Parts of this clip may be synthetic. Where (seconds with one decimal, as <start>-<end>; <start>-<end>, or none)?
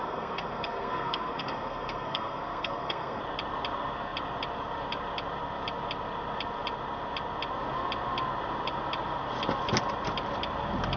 0.0-3.2